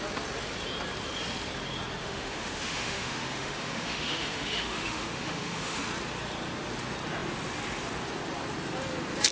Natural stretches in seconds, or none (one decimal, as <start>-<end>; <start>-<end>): 0.0-2.0; 5.8-9.3